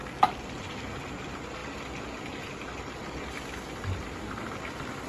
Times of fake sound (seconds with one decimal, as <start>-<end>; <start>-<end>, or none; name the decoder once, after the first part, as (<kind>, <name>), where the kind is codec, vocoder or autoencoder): none